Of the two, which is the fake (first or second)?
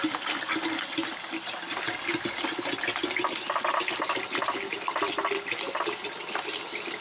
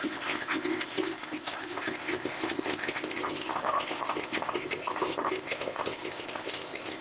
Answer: second